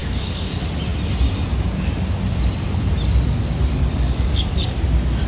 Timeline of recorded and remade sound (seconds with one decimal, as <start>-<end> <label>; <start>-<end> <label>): 0.0-0.5 remade; 0.5-3.9 recorded; 3.9-4.8 remade; 4.8-5.3 recorded